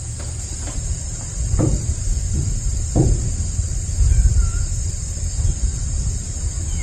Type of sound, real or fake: real